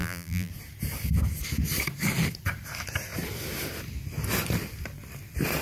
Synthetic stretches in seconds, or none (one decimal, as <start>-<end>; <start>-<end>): 0.0-0.5